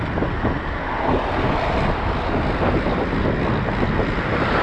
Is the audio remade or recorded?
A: recorded